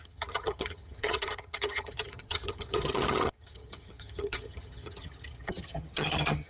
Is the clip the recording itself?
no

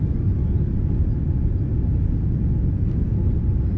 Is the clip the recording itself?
yes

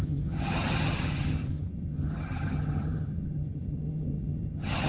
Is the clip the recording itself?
no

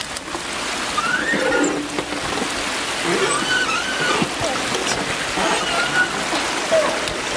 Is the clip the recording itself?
yes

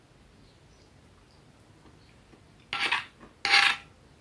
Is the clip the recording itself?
yes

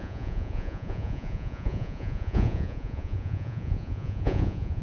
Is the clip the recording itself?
no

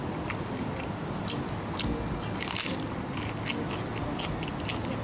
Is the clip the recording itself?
yes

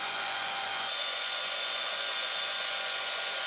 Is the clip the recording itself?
no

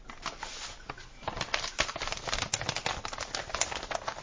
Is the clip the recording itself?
yes